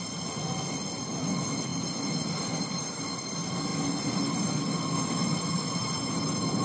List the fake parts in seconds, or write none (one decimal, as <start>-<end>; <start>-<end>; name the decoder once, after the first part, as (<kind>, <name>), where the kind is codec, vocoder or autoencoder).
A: none